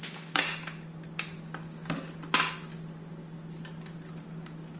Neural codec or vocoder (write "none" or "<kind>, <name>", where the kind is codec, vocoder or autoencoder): none